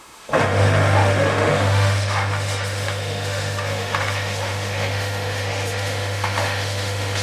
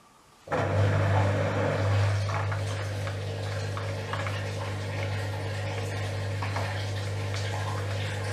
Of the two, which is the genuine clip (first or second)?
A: second